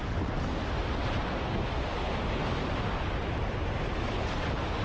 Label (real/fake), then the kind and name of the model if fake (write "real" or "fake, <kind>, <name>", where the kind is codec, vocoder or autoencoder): real